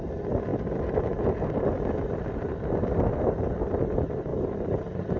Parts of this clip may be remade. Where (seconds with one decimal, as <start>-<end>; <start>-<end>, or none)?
none